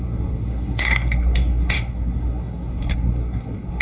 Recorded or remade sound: remade